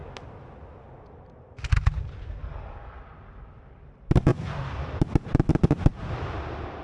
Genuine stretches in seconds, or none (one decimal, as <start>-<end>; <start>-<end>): 0.0-6.8